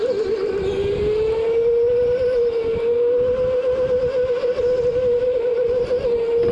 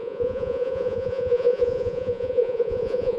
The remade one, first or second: second